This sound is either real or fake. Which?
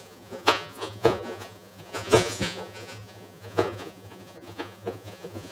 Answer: fake